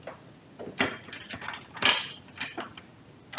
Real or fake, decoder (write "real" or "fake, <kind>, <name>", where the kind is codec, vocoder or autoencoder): real